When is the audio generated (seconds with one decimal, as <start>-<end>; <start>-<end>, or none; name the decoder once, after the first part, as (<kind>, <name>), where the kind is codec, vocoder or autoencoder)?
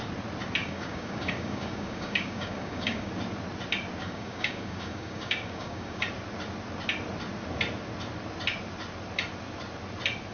0.6-3.1 (codec, DAC); 4.0-6.0